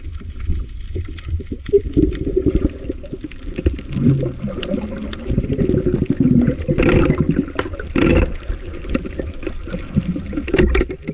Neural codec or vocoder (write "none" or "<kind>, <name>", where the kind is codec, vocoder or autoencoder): none